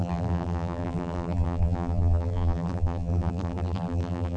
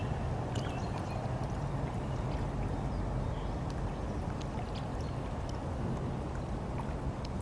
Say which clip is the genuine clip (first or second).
second